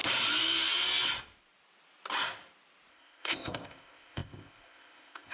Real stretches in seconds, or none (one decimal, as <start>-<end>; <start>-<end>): 0.0-2.9